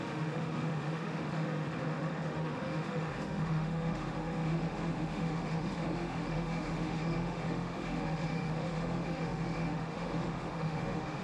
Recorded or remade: remade